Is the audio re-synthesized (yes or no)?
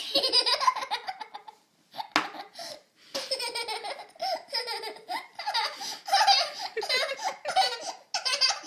no